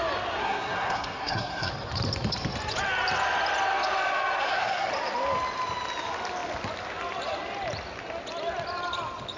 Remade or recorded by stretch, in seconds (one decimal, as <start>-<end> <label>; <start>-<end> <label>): 0.0-0.4 recorded; 0.4-1.7 remade; 1.7-4.4 recorded; 4.4-4.9 remade; 4.9-9.4 recorded